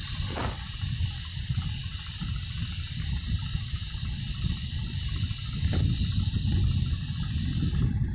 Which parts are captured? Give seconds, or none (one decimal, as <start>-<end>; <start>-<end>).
0.0-8.1